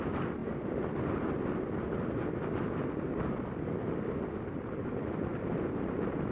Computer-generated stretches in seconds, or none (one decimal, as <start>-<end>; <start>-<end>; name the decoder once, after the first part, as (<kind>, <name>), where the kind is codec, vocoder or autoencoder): none